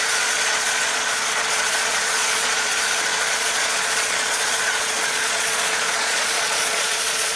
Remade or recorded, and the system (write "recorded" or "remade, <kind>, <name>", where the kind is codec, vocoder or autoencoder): remade, vocoder, Vocos